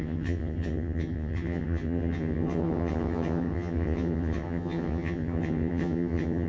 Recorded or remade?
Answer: remade